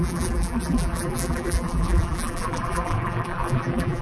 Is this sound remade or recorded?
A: remade